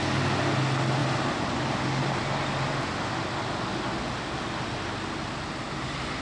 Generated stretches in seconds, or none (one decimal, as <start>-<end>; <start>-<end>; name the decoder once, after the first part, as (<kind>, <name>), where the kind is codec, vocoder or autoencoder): none